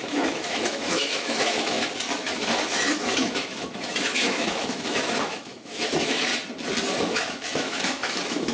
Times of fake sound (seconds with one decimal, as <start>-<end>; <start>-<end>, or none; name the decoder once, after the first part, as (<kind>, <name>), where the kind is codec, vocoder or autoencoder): 0.0-6.3 (autoencoder, DAC-VAE); 7.0-8.5